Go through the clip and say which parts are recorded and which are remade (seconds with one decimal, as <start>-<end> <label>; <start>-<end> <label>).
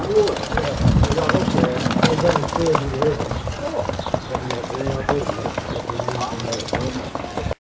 0.0-3.6 remade; 3.6-7.7 recorded